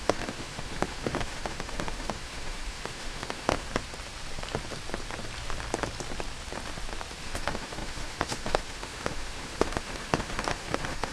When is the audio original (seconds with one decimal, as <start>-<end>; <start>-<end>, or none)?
3.7-7.2